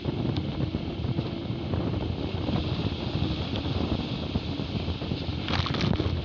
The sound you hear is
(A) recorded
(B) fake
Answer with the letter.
A